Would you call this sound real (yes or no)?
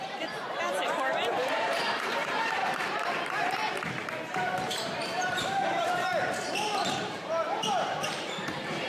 no